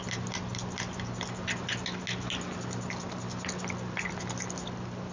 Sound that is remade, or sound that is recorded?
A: recorded